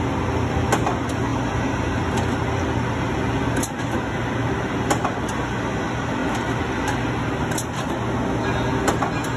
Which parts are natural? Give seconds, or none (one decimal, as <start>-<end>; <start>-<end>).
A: 0.0-9.4